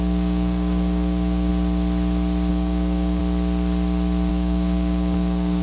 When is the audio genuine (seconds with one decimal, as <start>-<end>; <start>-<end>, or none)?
1.5-2.5; 3.2-4.3